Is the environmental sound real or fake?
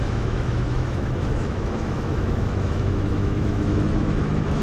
fake